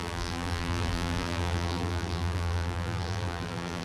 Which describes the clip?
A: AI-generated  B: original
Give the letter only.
A